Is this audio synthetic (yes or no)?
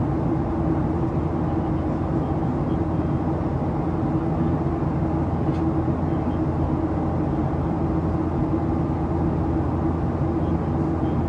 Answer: no